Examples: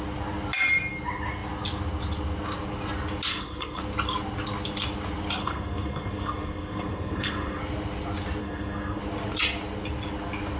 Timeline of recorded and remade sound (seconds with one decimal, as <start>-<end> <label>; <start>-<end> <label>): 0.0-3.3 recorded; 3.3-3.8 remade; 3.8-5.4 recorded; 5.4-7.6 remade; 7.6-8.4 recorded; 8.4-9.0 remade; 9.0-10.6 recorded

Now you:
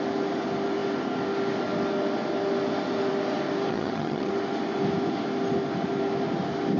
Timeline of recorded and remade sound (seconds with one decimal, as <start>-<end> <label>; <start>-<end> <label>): 0.0-3.7 recorded; 3.7-4.3 remade; 4.3-6.8 recorded

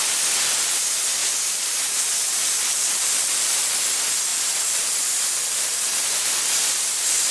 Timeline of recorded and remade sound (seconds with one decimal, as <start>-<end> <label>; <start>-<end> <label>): 0.0-1.2 recorded; 1.2-3.7 remade; 3.7-4.3 recorded; 4.3-5.9 remade; 5.9-7.3 recorded

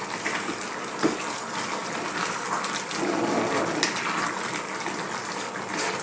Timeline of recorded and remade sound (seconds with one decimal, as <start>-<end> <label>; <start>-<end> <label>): 0.0-6.0 recorded

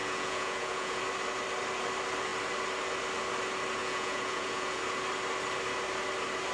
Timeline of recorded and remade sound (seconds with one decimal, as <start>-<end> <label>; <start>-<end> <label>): 0.0-1.0 remade; 1.0-3.8 recorded; 3.8-4.8 remade; 4.8-6.5 recorded

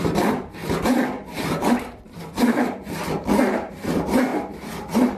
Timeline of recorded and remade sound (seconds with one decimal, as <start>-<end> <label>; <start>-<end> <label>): 0.0-4.3 remade; 4.3-5.2 recorded

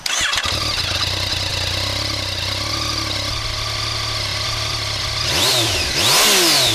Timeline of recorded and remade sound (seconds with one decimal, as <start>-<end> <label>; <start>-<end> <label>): 0.0-4.3 recorded; 4.3-5.9 remade; 5.9-6.7 recorded

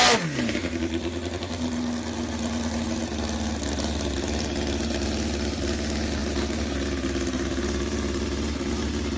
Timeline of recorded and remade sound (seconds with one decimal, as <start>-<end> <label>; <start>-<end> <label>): 0.0-9.2 recorded